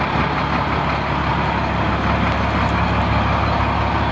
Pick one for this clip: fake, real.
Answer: real